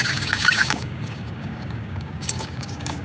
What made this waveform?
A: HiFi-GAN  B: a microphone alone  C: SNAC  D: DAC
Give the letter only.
D